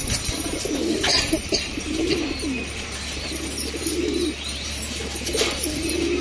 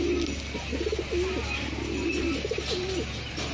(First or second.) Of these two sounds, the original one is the second